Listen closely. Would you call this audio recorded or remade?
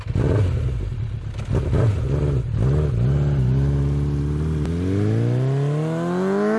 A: recorded